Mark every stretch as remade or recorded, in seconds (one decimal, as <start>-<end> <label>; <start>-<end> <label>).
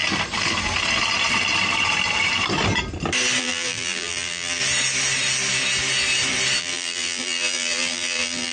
0.0-3.4 recorded; 3.4-4.6 remade; 4.6-6.6 recorded; 6.6-8.5 remade